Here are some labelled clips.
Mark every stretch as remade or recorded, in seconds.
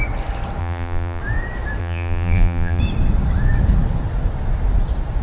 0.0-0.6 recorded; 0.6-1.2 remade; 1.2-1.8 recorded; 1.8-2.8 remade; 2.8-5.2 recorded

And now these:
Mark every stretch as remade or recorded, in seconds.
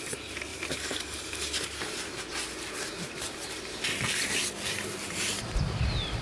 0.0-0.5 recorded; 0.5-1.2 remade; 1.2-3.7 recorded; 3.7-5.4 remade; 5.4-6.2 recorded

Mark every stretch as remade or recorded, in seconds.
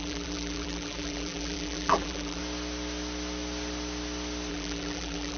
0.0-2.4 remade; 2.4-4.5 recorded; 4.5-5.4 remade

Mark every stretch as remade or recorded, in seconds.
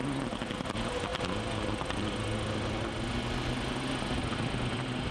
0.0-5.1 recorded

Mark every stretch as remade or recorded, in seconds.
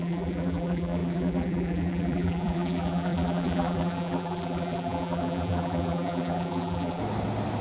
0.0-7.0 remade; 7.0-7.6 recorded